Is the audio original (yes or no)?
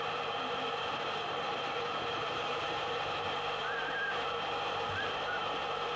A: no